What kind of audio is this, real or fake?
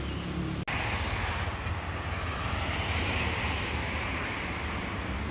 real